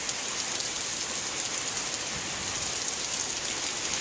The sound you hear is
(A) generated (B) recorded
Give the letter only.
B